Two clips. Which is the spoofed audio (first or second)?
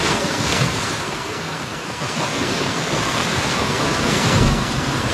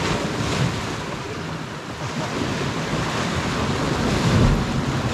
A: first